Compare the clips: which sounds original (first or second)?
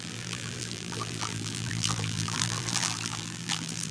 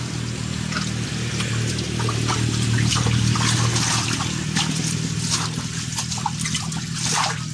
second